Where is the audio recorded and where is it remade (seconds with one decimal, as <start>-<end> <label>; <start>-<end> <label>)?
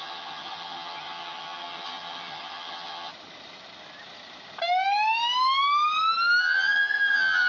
0.0-3.1 remade; 3.1-6.4 recorded; 6.4-7.5 remade